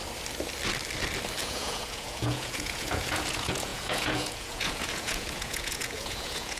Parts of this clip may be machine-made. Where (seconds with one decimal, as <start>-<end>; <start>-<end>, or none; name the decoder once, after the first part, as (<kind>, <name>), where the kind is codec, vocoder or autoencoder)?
1.4-6.6 (vocoder, Vocos)